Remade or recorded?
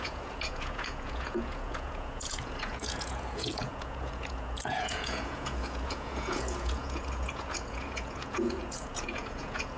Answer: remade